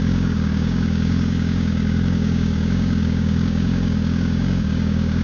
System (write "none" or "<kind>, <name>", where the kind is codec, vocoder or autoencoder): codec, DAC